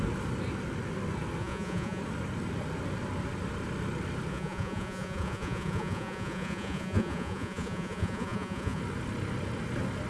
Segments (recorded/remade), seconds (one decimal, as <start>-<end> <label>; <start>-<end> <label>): 0.0-1.4 recorded; 1.4-2.0 remade; 2.0-4.3 recorded; 4.3-8.8 remade; 8.8-10.1 recorded